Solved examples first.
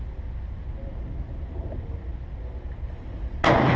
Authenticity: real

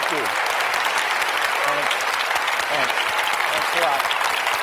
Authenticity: real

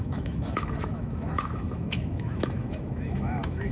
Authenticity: fake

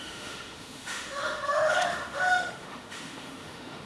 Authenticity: fake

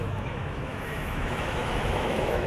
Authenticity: fake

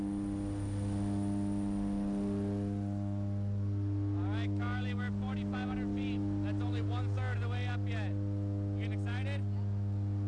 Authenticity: real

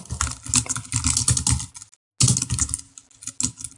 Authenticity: real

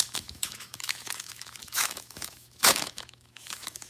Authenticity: fake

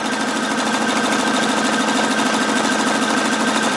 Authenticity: real